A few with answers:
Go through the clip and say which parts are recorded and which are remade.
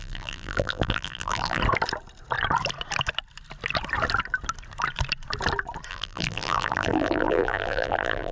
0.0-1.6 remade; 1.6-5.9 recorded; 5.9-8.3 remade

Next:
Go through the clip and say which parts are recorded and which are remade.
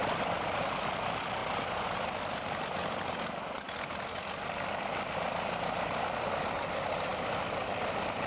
0.0-1.4 remade; 1.4-4.4 recorded; 4.4-8.3 remade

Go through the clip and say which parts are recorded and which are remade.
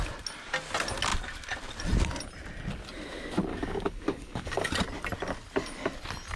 0.0-3.5 recorded; 3.5-4.7 remade; 4.7-6.4 recorded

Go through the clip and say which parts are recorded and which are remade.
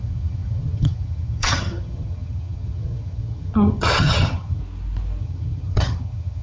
0.0-4.6 remade; 4.6-5.2 recorded; 5.2-6.4 remade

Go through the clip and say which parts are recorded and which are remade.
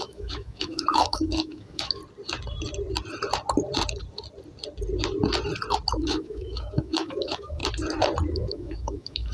0.0-2.0 remade; 2.0-5.9 recorded; 5.9-7.6 remade; 7.6-8.3 recorded; 8.3-9.3 remade